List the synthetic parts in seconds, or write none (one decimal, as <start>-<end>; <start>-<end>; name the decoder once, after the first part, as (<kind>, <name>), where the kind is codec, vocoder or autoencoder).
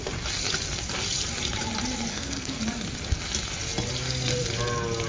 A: 2.1-2.6 (codec, SNAC)